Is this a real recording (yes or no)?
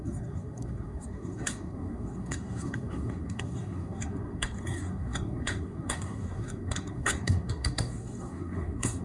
no